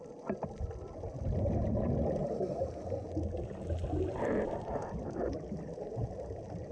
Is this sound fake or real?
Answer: real